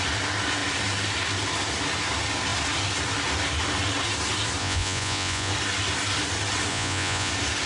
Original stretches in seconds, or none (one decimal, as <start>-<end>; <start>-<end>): 0.0-4.6; 5.5-6.7; 7.3-7.7